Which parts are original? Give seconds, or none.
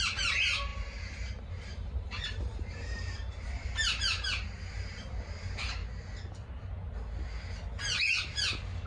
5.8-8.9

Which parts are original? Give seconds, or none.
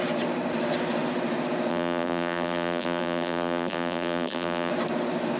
0.0-1.7; 4.7-5.4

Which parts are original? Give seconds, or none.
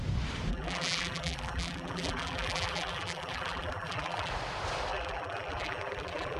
0.0-0.5; 4.3-4.9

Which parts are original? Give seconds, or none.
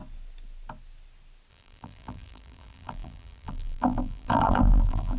0.0-1.5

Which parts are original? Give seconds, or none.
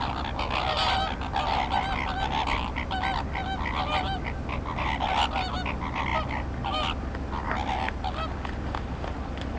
0.0-9.6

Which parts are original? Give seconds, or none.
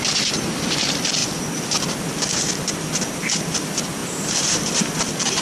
1.2-2.8